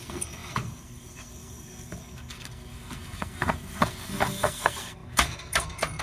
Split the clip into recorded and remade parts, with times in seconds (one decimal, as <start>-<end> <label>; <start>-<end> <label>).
0.0-6.0 remade